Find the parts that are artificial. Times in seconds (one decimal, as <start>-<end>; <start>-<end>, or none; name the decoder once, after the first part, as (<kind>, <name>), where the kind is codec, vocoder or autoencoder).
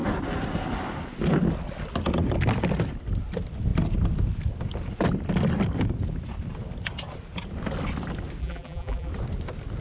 8.4-9.1 (vocoder, BigVGAN v2)